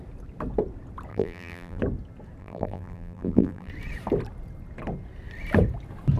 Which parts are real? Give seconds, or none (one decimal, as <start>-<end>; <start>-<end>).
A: 0.0-1.1; 1.8-2.4; 3.7-6.2

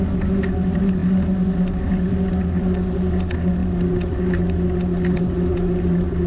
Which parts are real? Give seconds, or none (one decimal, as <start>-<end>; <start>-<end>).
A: 0.0-6.3

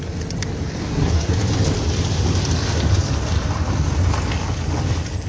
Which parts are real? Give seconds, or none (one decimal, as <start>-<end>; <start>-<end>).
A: 0.0-0.8; 1.3-5.3

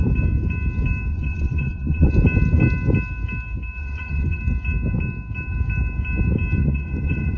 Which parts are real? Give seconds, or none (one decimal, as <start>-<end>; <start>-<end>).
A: 0.0-1.1; 2.1-3.8; 4.4-6.6

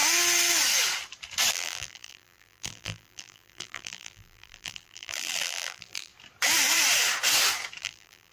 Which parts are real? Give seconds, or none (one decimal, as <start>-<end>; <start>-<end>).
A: 0.0-1.5; 6.1-7.8

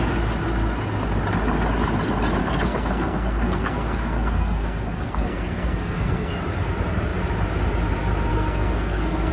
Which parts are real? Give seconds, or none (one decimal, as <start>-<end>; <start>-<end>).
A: 0.0-2.4; 6.3-8.3

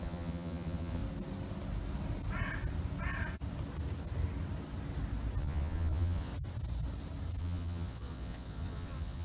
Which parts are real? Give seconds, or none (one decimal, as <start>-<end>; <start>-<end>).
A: 1.0-5.4; 6.3-7.4

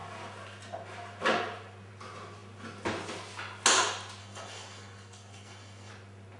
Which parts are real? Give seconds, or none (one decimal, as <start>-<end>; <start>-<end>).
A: 0.0-4.2; 5.9-6.4